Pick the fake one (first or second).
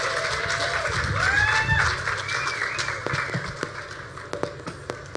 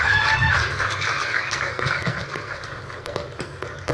second